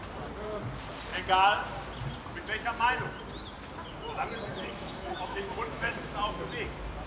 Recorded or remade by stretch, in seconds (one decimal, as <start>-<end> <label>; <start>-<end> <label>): 0.0-4.5 recorded; 4.5-6.1 remade; 6.1-7.1 recorded